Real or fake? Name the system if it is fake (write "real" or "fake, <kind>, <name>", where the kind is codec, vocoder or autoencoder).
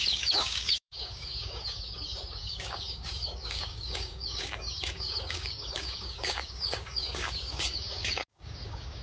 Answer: fake, codec, DAC